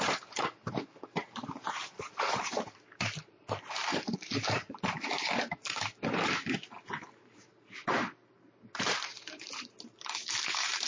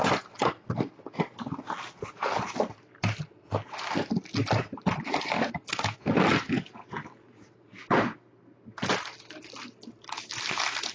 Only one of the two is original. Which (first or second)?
second